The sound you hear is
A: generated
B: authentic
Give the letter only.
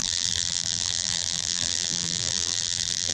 A